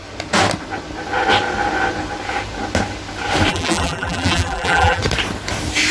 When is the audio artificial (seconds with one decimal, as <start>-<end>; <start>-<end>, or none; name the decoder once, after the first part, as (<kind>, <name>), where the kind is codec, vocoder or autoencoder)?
3.5-5.0 (vocoder, BigVGAN v2)